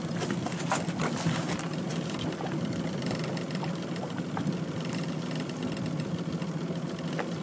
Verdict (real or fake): real